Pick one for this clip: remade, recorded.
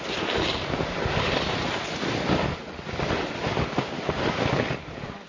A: recorded